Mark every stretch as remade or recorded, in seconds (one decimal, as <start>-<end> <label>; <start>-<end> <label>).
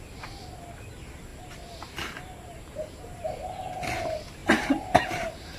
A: 0.0-1.3 recorded; 1.3-3.2 remade; 3.2-4.4 recorded; 4.4-5.6 remade